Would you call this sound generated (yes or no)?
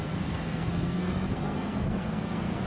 yes